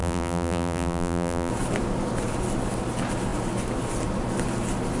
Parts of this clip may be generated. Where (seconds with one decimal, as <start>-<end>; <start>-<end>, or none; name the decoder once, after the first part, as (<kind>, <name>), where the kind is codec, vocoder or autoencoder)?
0.0-1.5 (vocoder, BigVGAN v2)